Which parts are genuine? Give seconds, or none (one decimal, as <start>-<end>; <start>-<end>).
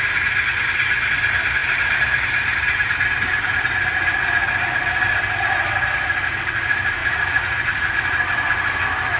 0.0-7.0; 7.9-9.2